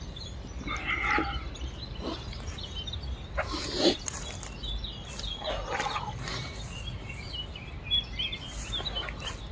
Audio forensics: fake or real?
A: real